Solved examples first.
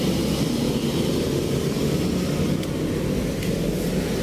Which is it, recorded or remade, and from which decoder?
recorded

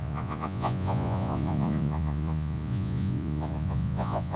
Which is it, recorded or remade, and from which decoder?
remade, vocoder, Vocos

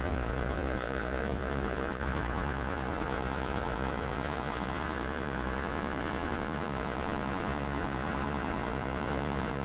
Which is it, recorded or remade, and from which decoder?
remade, vocoder, Vocos